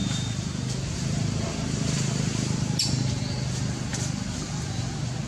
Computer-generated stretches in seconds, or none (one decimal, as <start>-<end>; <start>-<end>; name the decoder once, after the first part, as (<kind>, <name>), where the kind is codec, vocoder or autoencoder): 0.0-3.2 (vocoder, BigVGAN v2)